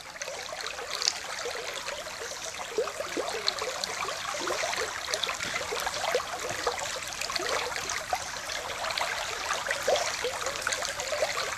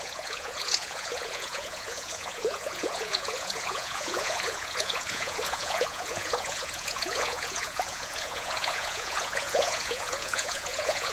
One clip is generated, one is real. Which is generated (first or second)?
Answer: second